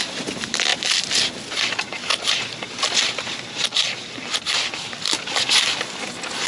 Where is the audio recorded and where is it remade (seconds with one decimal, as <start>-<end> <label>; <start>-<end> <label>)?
0.0-0.7 recorded; 0.7-1.3 remade; 1.3-2.1 recorded; 2.1-6.0 remade; 6.0-6.5 recorded

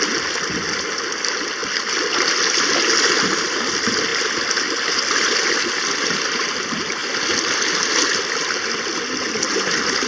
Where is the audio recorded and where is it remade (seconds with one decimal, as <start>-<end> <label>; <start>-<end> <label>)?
0.0-10.1 recorded

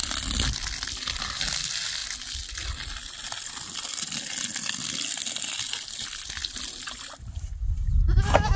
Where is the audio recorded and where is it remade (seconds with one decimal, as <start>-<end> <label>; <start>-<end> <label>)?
0.0-8.6 recorded

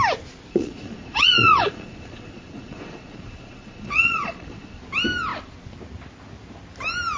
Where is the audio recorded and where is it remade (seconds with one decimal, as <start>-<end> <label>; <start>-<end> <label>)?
0.0-0.5 recorded; 0.5-4.8 remade; 4.8-7.2 recorded

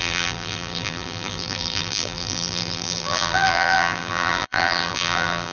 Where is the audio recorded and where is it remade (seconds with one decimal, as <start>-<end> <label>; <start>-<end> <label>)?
0.0-5.5 remade

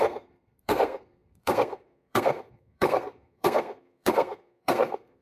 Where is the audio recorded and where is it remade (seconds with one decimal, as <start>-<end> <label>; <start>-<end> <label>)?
0.0-5.2 remade